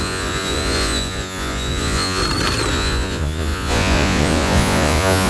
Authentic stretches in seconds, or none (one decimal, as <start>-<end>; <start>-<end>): 2.2-2.7